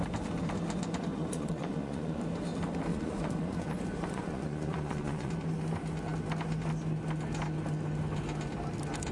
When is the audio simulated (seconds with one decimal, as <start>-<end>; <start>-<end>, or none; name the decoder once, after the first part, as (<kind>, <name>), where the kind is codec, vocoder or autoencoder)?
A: 1.1-2.2 (vocoder, Vocos); 2.9-5.3